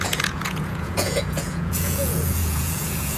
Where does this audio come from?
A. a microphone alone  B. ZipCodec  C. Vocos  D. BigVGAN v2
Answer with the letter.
C